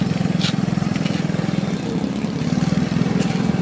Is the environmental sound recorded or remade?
recorded